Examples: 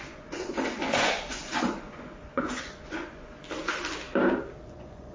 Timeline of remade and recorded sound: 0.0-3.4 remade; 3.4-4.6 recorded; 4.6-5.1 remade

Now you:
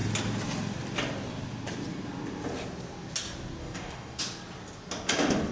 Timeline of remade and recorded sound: 0.0-3.6 recorded; 3.6-4.2 remade; 4.2-5.5 recorded

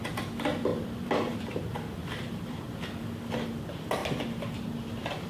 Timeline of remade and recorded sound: 0.0-0.7 recorded; 0.7-2.7 remade; 2.7-4.0 recorded; 4.0-4.6 remade; 4.6-5.3 recorded

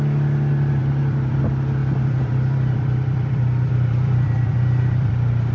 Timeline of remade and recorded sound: 0.0-0.8 recorded; 0.8-1.4 remade; 1.4-1.8 recorded; 1.8-5.1 remade; 5.1-5.5 recorded